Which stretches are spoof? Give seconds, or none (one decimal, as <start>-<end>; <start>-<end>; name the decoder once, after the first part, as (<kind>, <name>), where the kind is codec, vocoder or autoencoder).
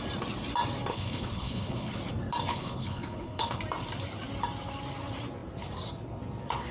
0.9-2.0 (codec, HILCodec); 2.5-3.6